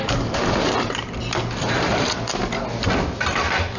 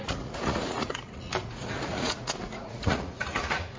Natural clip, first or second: first